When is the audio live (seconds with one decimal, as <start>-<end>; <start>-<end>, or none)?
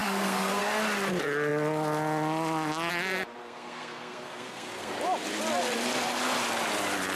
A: 0.6-3.4; 4.9-7.2